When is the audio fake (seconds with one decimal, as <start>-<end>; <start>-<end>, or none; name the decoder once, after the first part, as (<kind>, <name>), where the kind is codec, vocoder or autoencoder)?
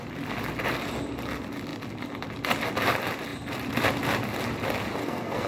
5.0-5.5 (codec, SNAC)